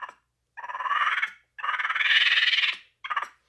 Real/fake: real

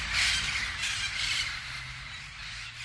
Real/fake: real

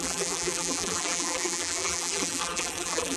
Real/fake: fake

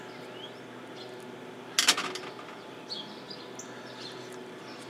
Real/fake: real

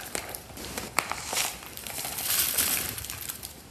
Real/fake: fake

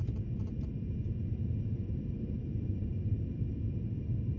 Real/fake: fake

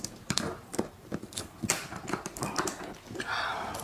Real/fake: fake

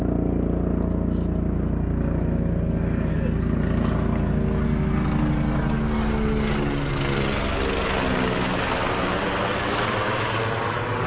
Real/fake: real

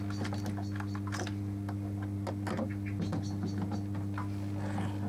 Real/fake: real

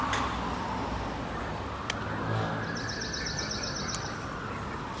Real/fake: real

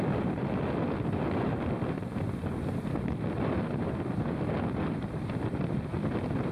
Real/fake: fake